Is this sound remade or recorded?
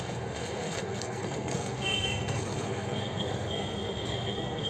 remade